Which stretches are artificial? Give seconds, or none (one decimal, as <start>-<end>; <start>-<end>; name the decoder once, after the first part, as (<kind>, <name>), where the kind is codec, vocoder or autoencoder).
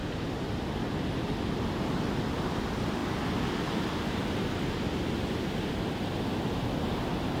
none